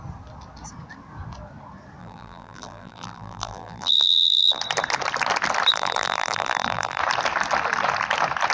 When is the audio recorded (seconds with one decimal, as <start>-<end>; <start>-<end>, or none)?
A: 0.0-2.0; 4.6-5.7; 7.0-8.5